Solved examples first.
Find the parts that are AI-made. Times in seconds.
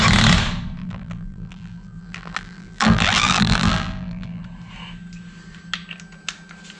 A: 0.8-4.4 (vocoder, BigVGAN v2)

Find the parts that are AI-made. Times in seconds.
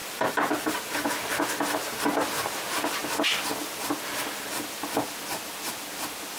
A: 0.0-0.8 (vocoder, BigVGAN v2)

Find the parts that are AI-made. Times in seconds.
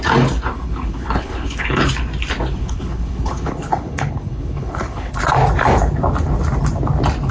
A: 0.5-1.9 (codec, HILCodec); 2.6-5.1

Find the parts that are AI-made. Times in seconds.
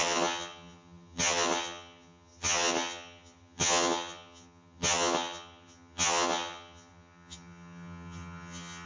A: 0.0-8.9 (vocoder, HiFi-GAN)